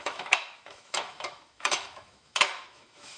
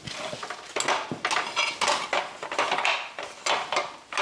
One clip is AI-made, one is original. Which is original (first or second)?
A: second